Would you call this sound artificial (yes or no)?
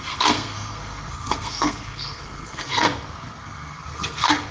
yes